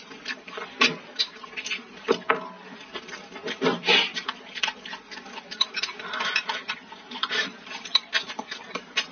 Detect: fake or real fake